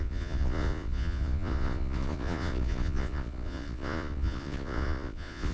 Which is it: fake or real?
fake